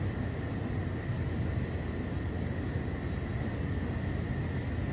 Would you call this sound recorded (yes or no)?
yes